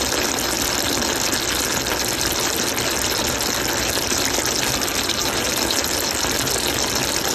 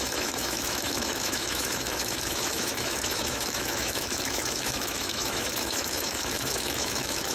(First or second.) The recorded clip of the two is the first